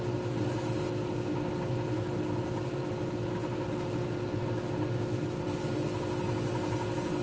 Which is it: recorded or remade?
recorded